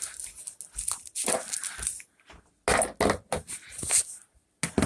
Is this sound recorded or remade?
recorded